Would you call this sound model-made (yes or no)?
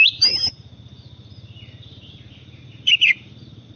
yes